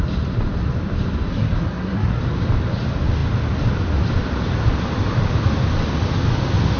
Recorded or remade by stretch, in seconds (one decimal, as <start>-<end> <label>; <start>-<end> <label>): 0.0-1.3 recorded; 1.3-2.2 remade; 2.2-6.8 recorded